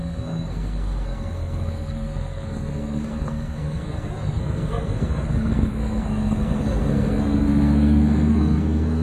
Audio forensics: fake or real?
fake